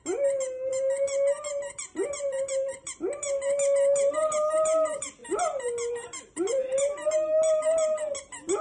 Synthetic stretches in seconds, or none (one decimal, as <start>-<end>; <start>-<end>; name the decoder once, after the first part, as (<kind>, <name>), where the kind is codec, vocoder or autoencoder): 0.7-2.7 (vocoder, BigVGAN v2)